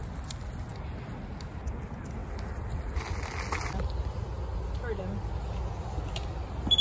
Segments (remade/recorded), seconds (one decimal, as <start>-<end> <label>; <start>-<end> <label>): 0.0-6.8 recorded